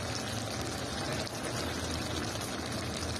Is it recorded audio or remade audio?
recorded